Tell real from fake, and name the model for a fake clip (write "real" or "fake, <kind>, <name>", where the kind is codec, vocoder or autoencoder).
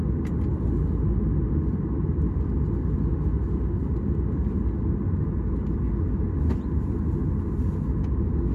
real